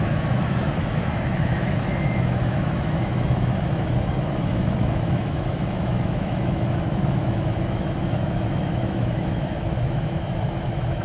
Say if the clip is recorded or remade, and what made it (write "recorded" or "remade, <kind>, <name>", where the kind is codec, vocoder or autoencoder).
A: remade, autoencoder, DAC-VAE